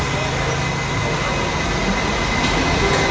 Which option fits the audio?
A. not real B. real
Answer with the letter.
B